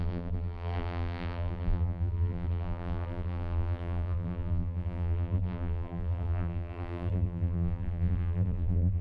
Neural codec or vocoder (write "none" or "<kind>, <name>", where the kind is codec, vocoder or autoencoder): vocoder, BigVGAN v2